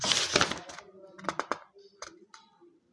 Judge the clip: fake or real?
real